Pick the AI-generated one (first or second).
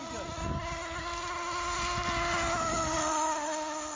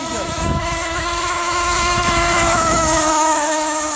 second